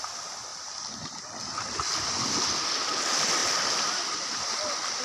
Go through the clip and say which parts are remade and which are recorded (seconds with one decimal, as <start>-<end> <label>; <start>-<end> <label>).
0.0-0.5 recorded; 0.5-1.2 remade; 1.2-3.4 recorded; 3.4-5.0 remade